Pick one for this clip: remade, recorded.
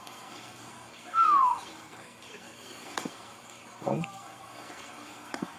remade